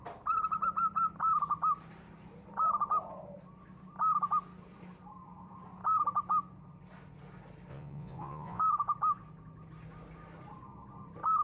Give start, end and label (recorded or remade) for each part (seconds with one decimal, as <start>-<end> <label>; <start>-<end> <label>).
0.0-7.7 recorded; 7.7-8.6 remade; 8.6-11.4 recorded